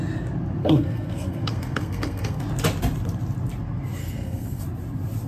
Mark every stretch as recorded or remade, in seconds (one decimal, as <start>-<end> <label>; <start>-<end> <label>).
0.0-0.6 recorded; 0.6-2.4 remade; 2.4-4.0 recorded; 4.0-4.6 remade; 4.6-5.3 recorded